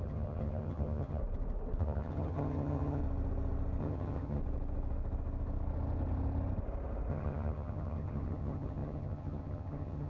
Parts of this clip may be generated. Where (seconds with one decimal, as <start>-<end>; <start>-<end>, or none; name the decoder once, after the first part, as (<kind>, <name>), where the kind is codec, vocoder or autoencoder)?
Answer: 0.0-1.2 (vocoder, HiFi-GAN); 1.8-3.0; 3.8-4.4; 7.1-10.1